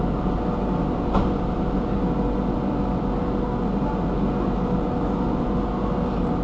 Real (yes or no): yes